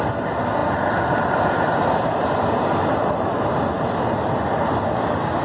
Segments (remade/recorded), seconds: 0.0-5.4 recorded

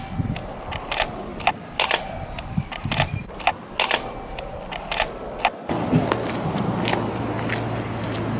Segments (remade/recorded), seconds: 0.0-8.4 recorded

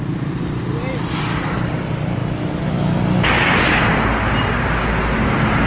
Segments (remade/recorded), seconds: 0.0-5.7 recorded

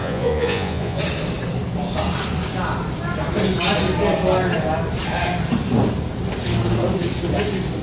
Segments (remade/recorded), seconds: 0.0-1.0 remade; 1.0-7.8 recorded